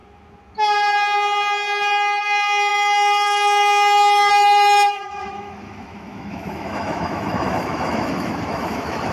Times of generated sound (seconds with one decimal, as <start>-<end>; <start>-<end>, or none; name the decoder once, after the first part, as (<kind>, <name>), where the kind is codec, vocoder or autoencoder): 2.2-9.1 (autoencoder, DAC-VAE)